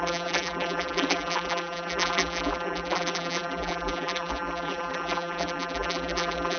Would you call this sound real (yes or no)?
no